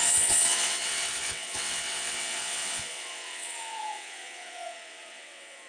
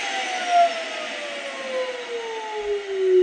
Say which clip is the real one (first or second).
second